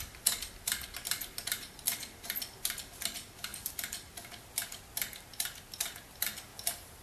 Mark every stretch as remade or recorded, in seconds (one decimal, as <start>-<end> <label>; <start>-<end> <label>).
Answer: 0.0-7.0 recorded